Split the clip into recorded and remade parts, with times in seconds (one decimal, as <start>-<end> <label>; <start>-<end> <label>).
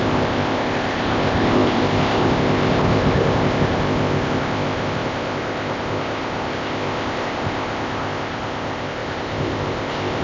0.0-10.2 remade